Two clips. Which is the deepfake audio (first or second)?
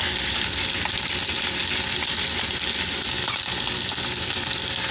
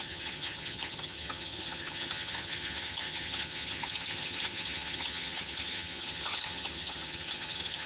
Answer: second